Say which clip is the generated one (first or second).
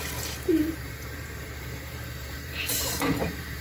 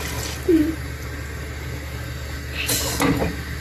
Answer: first